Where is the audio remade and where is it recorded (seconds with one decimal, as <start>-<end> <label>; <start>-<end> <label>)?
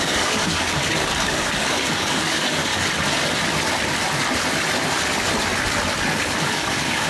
0.0-2.7 remade; 2.7-6.2 recorded; 6.2-7.1 remade